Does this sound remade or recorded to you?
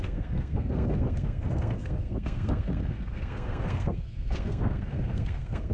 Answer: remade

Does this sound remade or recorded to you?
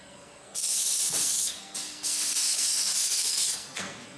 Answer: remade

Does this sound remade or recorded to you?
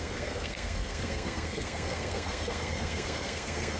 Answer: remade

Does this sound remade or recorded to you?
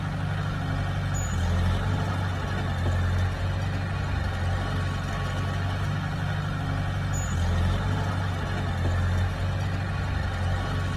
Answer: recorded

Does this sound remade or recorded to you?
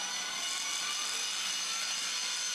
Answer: recorded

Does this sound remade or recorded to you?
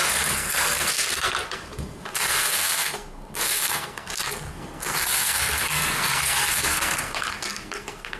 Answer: remade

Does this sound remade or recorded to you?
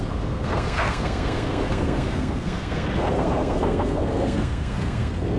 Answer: remade